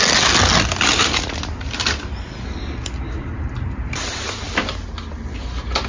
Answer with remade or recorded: recorded